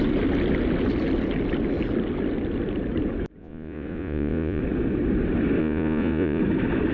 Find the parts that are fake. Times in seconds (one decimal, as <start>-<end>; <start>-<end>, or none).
3.4-4.6; 5.6-6.4